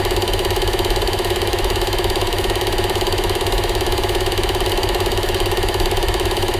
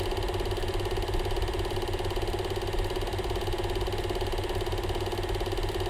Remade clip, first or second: first